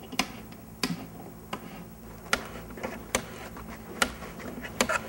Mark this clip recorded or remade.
recorded